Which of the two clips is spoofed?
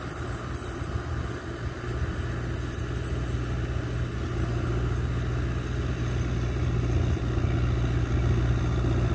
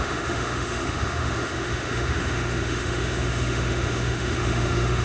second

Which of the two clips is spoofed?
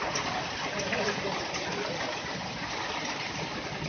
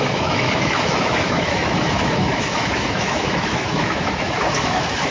second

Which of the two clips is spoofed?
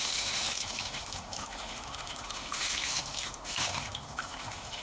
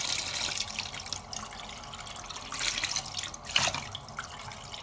first